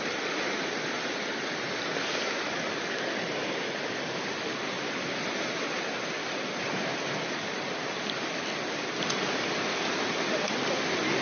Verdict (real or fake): real